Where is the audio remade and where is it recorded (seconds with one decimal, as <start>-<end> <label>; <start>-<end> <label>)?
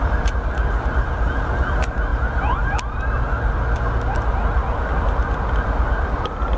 0.0-6.6 recorded